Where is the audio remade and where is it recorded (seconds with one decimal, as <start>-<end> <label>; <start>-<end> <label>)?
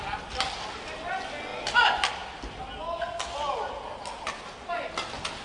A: 0.0-5.4 recorded